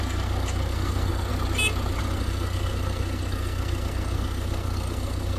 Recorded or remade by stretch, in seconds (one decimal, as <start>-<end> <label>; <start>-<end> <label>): 0.0-1.3 remade; 1.3-2.0 recorded; 2.0-5.4 remade